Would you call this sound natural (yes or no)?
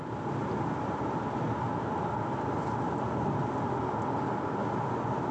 yes